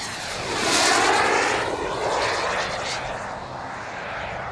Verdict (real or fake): real